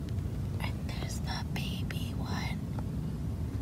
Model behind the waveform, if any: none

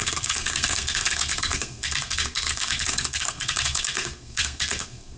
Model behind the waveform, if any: codec, SNAC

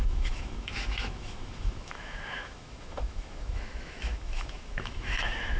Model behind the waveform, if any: autoencoder, DAC-VAE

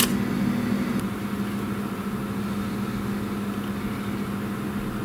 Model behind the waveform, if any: none